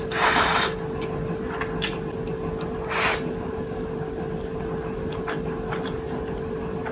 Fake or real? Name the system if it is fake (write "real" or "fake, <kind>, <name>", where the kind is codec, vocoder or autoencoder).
real